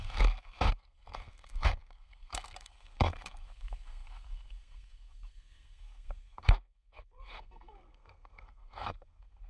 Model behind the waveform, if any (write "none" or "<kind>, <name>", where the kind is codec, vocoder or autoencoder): codec, SNAC